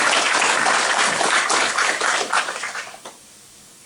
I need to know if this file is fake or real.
fake